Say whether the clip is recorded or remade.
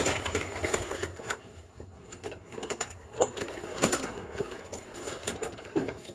remade